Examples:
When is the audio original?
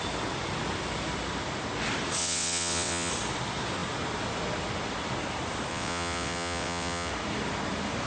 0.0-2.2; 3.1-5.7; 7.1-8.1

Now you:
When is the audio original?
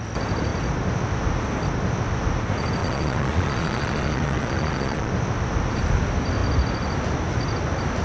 0.0-2.8; 5.1-8.0